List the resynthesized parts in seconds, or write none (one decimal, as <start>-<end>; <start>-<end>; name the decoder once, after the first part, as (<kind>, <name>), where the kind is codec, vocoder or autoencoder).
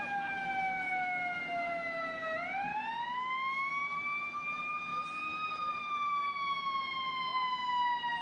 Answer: 4.9-6.1 (vocoder, BigVGAN v2)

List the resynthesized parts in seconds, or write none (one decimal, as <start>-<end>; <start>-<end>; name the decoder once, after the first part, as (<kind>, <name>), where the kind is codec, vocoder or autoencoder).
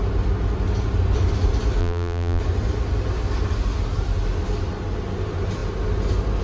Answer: 1.8-2.4 (vocoder, BigVGAN v2)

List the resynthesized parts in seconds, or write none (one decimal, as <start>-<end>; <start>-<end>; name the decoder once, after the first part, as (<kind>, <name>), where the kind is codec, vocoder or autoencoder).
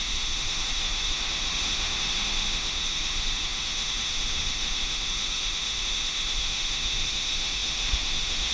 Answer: 0.0-8.5 (autoencoder, DAC-VAE)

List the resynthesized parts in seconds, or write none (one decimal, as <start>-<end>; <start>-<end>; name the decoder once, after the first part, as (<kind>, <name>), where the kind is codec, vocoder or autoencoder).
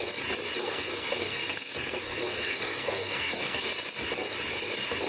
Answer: 0.6-3.7 (codec, SNAC)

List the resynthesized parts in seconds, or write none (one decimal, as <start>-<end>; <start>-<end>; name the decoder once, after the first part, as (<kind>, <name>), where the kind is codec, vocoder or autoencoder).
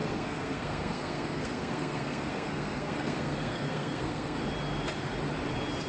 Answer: 0.0-4.4 (codec, SNAC)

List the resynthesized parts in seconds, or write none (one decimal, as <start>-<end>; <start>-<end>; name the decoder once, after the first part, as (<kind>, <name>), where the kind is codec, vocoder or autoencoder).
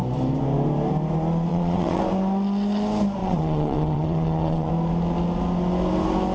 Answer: 1.5-2.0 (vocoder, WaveNeXt); 3.2-4.7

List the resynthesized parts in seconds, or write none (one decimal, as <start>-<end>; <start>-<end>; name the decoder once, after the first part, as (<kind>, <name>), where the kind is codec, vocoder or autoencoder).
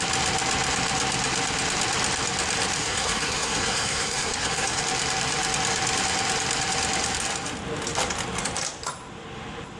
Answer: 2.8-4.8 (codec, SNAC)